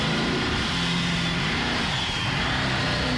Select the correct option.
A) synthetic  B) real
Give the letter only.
B